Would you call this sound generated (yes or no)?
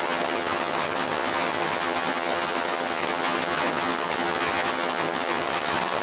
yes